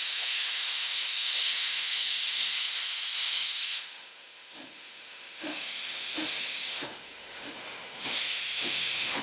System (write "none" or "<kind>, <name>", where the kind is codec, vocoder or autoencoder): autoencoder, DAC-VAE